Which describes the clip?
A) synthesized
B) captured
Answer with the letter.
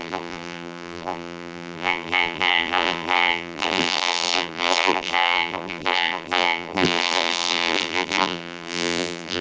A